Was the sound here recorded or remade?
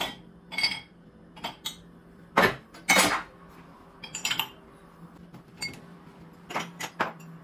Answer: recorded